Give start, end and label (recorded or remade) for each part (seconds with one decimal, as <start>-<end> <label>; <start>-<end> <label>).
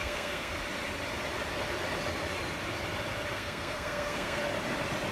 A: 0.0-0.5 remade; 0.5-3.3 recorded; 3.3-4.4 remade; 4.4-5.1 recorded